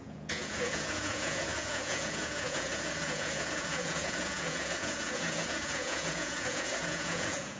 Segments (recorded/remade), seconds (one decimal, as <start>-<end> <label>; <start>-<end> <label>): 0.0-7.6 remade